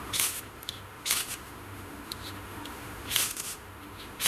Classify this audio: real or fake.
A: fake